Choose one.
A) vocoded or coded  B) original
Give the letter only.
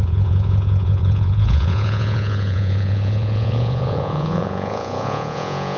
A